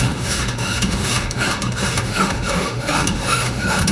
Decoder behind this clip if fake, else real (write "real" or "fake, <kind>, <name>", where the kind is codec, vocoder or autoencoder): fake, autoencoder, DAC-VAE